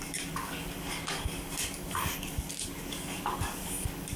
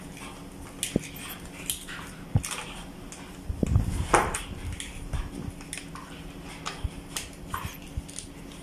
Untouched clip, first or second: second